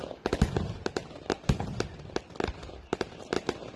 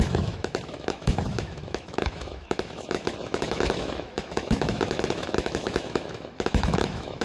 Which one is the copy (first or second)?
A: second